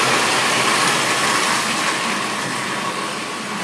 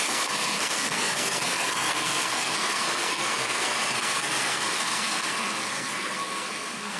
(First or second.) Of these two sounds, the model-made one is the second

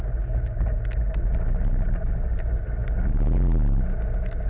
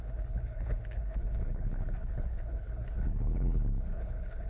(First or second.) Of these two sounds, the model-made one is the second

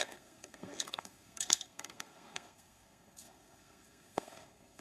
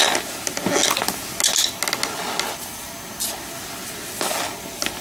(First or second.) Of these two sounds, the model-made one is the first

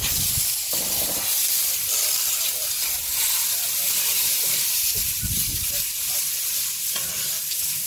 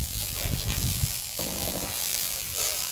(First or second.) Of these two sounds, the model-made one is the second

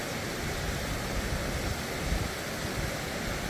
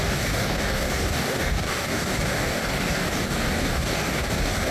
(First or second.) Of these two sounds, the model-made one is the second